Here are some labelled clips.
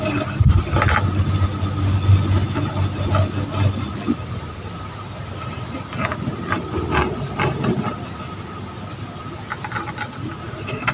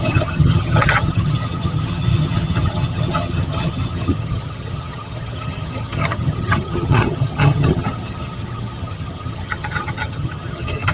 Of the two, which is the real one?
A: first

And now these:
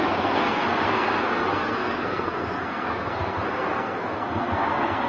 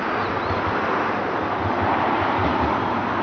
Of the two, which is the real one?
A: second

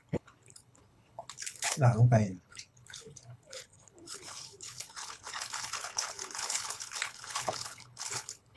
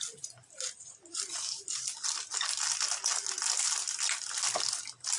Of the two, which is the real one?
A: second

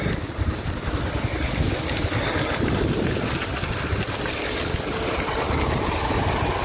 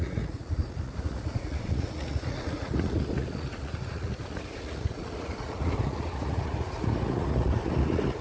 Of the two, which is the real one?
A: first